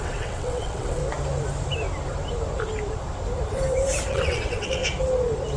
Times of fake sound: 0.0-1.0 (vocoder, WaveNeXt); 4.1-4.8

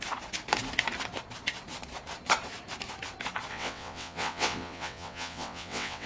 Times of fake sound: 3.5-6.1 (vocoder, WaveNeXt)

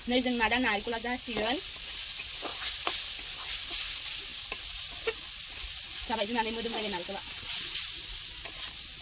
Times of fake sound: none

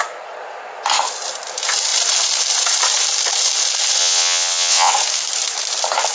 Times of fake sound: 4.0-4.9 (vocoder, WaveNeXt)

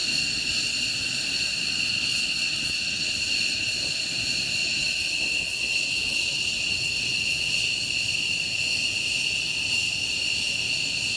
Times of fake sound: 2.1-3.1 (vocoder, WaveNeXt); 4.6-7.6

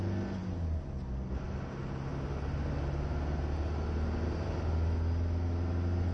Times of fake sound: none

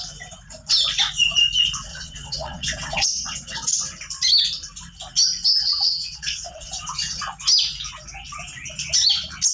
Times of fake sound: 1.9-3.7 (vocoder, WaveNeXt); 5.6-7.2